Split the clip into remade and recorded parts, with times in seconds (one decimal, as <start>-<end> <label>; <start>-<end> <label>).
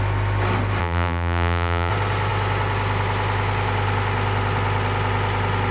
0.0-0.8 recorded; 0.8-1.9 remade; 1.9-5.7 recorded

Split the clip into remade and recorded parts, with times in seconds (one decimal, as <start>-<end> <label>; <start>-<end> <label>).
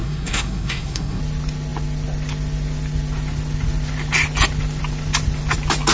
0.0-1.2 remade; 1.2-5.9 recorded